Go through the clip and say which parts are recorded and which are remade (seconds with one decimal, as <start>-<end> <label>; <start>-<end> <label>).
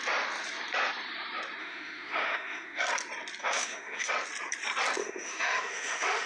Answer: 0.0-1.6 recorded; 1.6-2.8 remade; 2.8-3.4 recorded; 3.4-4.1 remade; 4.1-5.0 recorded; 5.0-6.3 remade